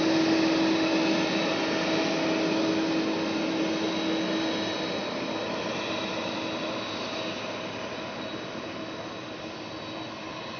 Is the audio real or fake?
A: real